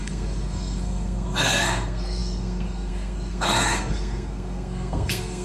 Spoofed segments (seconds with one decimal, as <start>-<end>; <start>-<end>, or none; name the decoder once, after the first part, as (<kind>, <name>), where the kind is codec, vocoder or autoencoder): 0.0-5.4 (codec, SNAC)